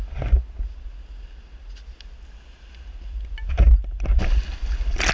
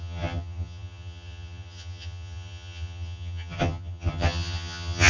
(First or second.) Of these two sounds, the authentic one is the first